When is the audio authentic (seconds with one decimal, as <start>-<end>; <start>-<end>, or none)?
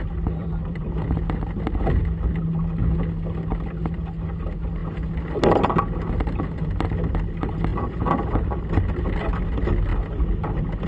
0.0-0.4; 1.0-10.9